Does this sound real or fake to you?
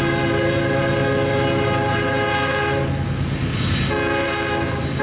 real